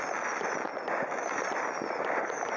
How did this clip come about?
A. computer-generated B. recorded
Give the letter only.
B